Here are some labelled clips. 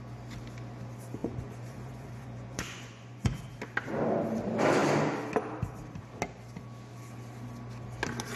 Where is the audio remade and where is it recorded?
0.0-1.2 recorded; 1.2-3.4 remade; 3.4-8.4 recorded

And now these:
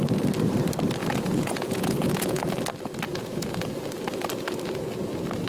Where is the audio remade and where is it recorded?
0.0-1.0 recorded; 1.0-2.4 remade; 2.4-3.1 recorded; 3.1-3.7 remade; 3.7-5.5 recorded